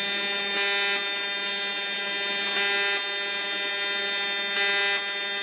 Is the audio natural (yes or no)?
yes